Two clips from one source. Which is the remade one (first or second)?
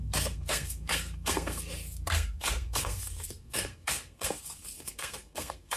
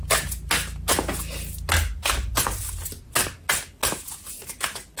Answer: first